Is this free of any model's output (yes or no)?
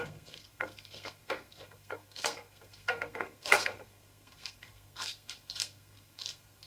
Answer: no